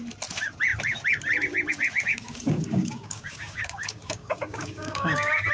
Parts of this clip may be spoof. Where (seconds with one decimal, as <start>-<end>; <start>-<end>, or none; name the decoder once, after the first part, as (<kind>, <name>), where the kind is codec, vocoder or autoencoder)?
2.1-5.5 (codec, DAC)